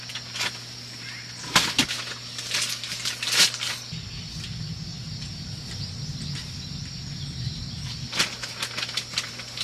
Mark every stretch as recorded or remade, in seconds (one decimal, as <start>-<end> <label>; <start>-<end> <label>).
0.0-5.0 recorded; 5.0-5.8 remade; 5.8-9.6 recorded